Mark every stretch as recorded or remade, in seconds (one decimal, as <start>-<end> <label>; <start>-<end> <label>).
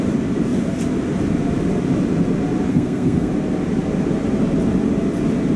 0.0-2.7 recorded; 2.7-3.3 remade; 3.3-5.6 recorded